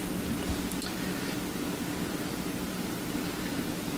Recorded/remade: recorded